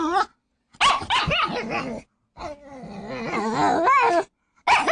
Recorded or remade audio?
recorded